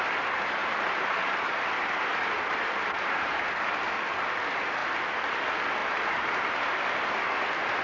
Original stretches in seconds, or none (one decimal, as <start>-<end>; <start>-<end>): 0.0-0.6; 3.6-5.8; 6.8-7.8

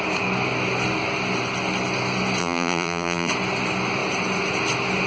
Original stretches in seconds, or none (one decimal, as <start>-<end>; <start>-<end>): 0.0-2.4; 3.3-5.1

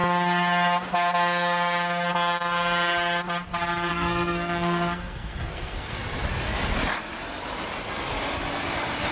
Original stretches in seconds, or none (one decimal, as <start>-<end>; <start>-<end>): 0.0-3.9; 6.0-9.1

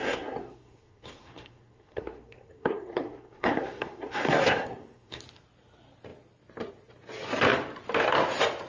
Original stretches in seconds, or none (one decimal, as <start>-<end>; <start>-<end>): 5.2-8.7

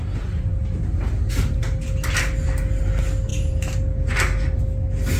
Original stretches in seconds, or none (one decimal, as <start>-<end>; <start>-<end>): 0.0-5.2